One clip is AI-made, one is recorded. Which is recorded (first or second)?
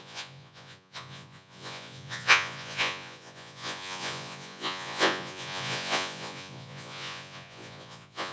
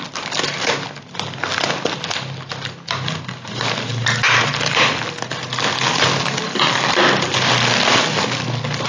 second